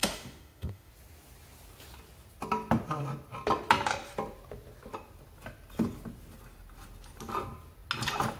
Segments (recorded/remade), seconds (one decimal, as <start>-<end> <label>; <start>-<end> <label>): 0.0-0.9 remade; 0.9-8.4 recorded